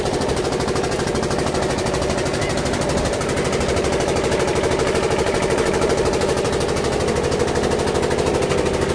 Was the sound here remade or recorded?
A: remade